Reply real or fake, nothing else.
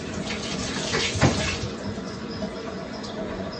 fake